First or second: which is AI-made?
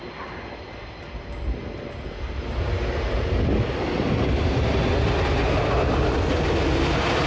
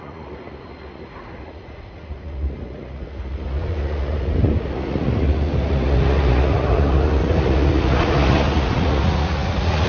second